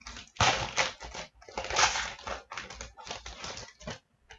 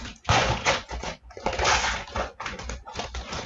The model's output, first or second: second